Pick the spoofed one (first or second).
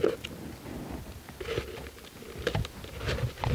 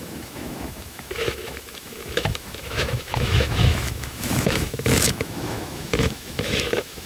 second